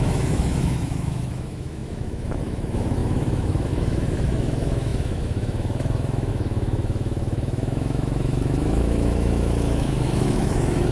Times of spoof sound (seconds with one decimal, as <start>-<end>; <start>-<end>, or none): 0.0-10.9